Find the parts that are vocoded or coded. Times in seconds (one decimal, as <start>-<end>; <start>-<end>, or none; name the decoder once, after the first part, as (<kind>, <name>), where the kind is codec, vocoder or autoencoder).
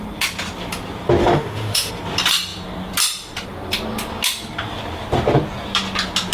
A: 1.2-1.9 (autoencoder, DAC-VAE)